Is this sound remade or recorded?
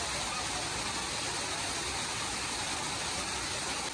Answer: recorded